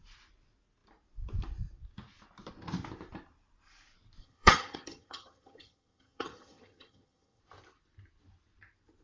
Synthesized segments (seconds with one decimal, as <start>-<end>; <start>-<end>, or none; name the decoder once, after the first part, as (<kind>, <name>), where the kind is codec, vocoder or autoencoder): 4.2-7.4 (vocoder, HiFi-GAN)